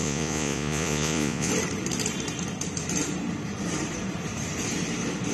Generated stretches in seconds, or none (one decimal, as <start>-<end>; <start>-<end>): 0.0-1.5